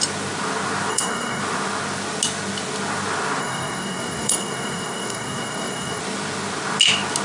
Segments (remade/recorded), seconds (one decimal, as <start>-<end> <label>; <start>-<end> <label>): 0.0-0.9 recorded; 0.9-1.4 remade; 1.4-3.4 recorded; 3.4-6.0 remade; 6.0-7.2 recorded